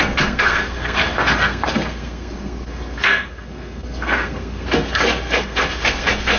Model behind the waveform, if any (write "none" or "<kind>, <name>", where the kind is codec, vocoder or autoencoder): codec, SNAC